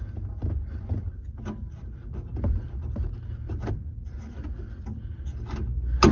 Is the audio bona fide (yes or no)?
yes